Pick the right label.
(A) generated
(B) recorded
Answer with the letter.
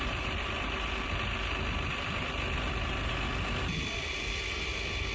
B